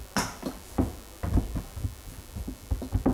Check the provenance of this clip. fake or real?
real